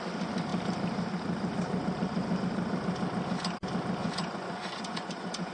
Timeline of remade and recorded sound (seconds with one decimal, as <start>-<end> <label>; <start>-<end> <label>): 0.0-4.0 recorded; 4.0-5.5 remade